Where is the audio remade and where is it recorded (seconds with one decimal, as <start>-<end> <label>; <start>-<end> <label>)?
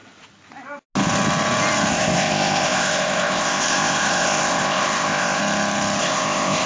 0.0-1.9 recorded; 1.9-5.4 remade; 5.4-6.0 recorded; 6.0-6.7 remade